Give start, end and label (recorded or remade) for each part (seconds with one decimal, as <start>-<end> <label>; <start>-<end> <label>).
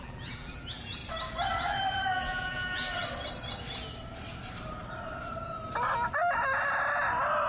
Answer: 0.0-1.0 remade; 1.0-1.6 recorded; 1.6-3.0 remade; 3.0-7.5 recorded